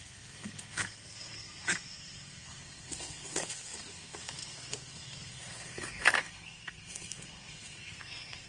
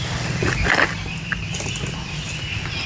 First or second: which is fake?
first